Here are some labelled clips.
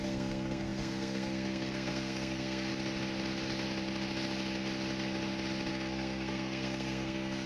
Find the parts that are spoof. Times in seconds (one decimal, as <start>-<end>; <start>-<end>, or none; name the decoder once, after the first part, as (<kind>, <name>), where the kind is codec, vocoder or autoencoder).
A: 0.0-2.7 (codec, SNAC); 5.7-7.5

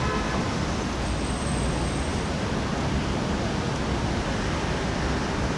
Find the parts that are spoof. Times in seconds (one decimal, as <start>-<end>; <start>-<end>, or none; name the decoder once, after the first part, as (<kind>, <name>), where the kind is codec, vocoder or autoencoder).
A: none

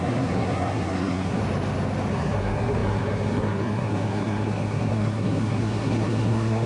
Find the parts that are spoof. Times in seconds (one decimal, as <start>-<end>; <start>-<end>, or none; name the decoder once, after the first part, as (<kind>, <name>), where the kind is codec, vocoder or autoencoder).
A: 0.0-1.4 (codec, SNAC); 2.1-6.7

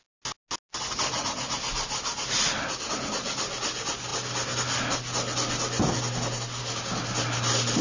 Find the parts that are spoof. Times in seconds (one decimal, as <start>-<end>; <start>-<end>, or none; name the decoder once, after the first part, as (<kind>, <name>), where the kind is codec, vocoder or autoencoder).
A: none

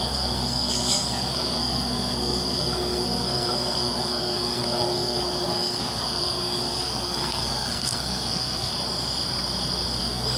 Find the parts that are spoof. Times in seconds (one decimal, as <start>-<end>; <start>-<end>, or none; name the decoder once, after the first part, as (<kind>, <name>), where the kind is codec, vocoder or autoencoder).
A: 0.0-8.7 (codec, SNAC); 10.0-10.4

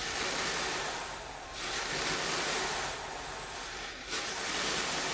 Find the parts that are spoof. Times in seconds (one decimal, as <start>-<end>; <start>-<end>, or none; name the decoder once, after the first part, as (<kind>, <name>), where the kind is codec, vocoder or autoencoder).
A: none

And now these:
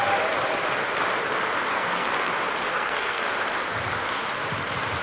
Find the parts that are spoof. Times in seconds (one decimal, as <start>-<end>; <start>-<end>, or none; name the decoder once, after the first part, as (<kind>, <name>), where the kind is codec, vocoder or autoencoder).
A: 1.7-2.3 (codec, SNAC); 2.7-3.3